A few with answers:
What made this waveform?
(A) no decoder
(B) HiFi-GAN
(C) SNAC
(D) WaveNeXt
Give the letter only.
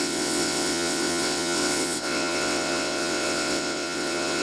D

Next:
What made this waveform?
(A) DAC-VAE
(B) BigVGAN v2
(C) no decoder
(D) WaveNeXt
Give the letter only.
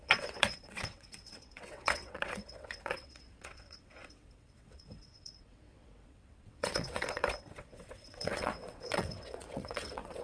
D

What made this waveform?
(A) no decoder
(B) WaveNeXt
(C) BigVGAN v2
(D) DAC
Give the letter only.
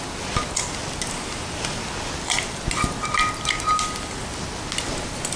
A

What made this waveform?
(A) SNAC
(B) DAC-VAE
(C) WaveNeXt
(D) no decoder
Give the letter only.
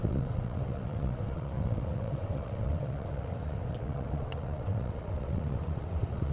C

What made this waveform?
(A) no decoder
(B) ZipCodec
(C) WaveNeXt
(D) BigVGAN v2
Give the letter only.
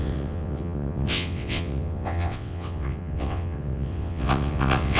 C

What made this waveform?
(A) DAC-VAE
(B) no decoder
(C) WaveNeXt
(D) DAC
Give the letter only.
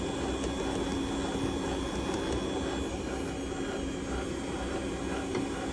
B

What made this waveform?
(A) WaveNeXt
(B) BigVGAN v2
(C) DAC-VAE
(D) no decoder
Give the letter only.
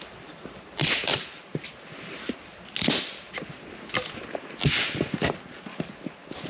D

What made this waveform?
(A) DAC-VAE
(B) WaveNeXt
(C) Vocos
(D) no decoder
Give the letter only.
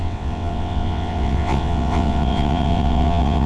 B